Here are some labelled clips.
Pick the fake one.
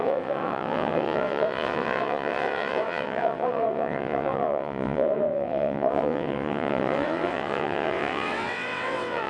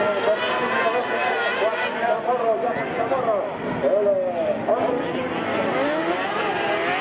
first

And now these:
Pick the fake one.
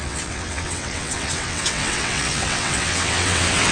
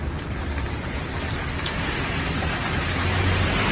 first